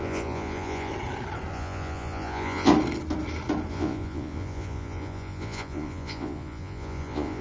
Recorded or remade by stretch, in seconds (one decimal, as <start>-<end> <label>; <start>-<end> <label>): 0.0-0.9 remade; 0.9-1.5 recorded; 1.5-2.7 remade; 2.7-3.7 recorded; 3.7-7.4 remade